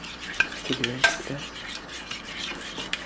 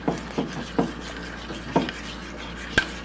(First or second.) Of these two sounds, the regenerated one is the first